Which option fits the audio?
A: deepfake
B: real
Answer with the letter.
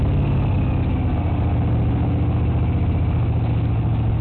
B